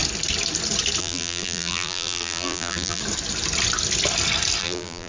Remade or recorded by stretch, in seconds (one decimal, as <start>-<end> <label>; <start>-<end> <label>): 0.0-1.0 recorded; 1.0-3.0 remade; 3.0-4.6 recorded; 4.6-5.1 remade